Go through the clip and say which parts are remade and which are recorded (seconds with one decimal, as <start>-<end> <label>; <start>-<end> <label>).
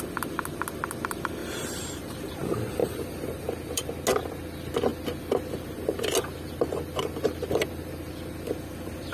0.0-1.4 recorded; 1.4-2.3 remade; 2.3-2.8 recorded; 2.8-3.9 remade; 3.9-9.1 recorded